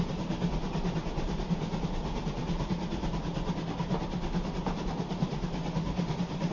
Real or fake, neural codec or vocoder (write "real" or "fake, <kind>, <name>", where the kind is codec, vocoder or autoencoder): real